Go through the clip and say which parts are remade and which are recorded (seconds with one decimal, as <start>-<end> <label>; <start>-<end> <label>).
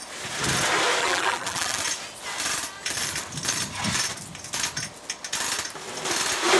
0.0-1.0 recorded; 1.0-1.8 remade; 1.8-6.6 recorded